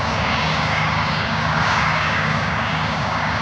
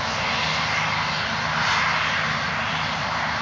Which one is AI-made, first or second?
first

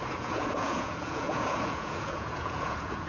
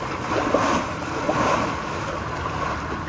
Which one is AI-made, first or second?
first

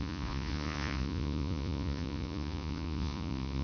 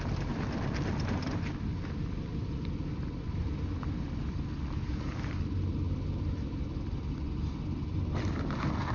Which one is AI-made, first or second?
first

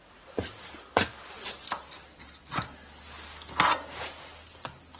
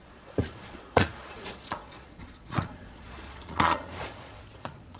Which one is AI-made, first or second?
second